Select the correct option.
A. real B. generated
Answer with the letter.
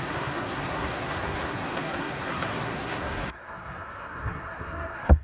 B